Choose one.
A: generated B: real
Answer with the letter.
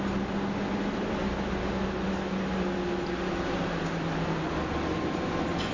B